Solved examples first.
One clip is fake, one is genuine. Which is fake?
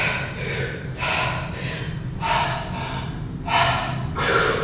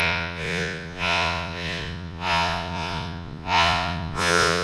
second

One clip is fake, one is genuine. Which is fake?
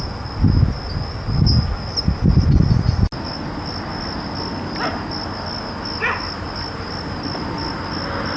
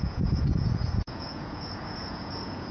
second